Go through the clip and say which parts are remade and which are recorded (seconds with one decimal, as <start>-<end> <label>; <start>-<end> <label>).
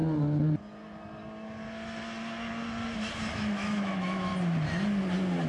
0.0-3.3 recorded; 3.3-4.3 remade; 4.3-5.5 recorded